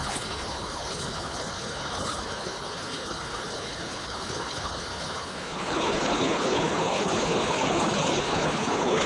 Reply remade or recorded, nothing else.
remade